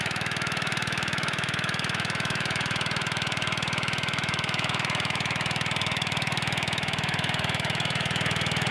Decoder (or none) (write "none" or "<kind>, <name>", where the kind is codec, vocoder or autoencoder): autoencoder, DAC-VAE